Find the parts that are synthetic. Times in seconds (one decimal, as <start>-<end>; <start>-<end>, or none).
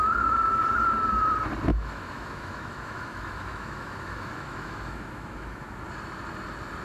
1.7-5.8